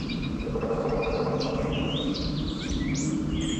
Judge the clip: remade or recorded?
remade